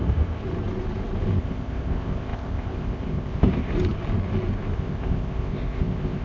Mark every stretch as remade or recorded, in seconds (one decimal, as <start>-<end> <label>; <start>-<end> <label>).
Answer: 0.0-0.4 remade; 0.4-1.4 recorded; 1.4-3.7 remade; 3.7-4.7 recorded; 4.7-6.2 remade